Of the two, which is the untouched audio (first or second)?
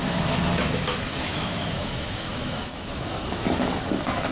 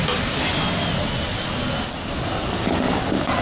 second